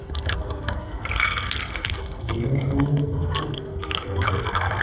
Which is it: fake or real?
fake